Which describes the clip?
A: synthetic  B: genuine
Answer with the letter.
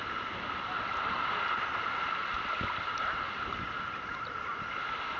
A